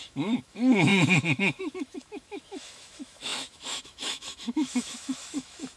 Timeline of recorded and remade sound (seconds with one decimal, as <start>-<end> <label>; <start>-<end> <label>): 0.0-5.8 remade